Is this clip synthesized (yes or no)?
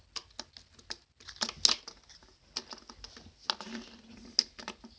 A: no